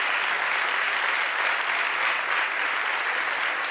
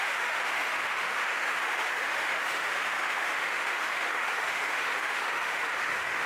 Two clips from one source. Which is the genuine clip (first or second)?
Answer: first